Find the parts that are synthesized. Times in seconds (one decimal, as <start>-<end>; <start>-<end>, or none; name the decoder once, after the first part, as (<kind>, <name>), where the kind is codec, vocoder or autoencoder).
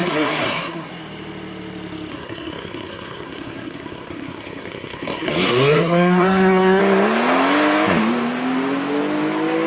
0.0-0.9 (codec, SNAC); 2.1-6.8